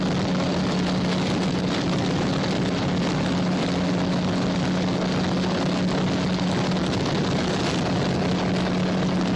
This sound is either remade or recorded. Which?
recorded